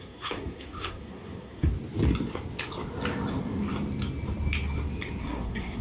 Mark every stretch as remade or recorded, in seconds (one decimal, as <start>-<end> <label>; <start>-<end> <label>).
0.0-1.7 remade; 1.7-5.2 recorded; 5.2-5.8 remade